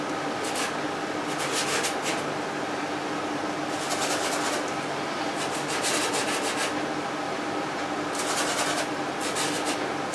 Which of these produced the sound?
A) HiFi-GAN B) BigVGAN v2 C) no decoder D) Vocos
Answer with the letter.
C